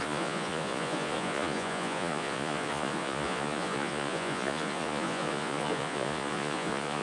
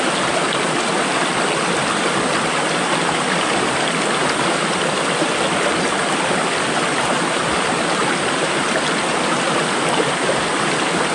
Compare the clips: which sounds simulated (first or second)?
first